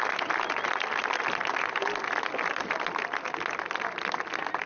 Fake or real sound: real